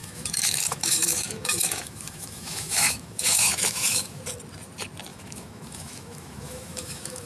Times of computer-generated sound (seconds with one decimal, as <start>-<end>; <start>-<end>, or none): 0.0-4.2; 5.1-7.3